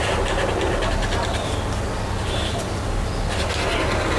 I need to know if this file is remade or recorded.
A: recorded